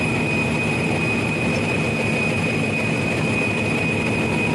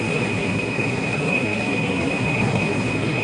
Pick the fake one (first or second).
second